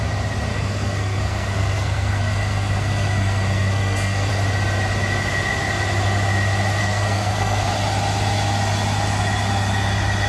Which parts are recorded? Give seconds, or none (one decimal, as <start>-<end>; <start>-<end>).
0.0-0.5; 4.3-6.8; 7.7-10.3